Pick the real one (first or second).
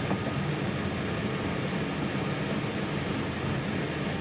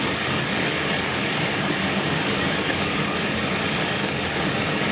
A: first